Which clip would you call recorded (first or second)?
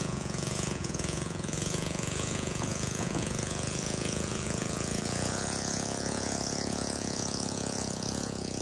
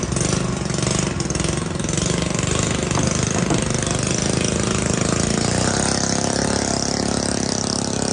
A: second